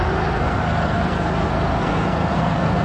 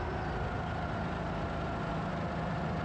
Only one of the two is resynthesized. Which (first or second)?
first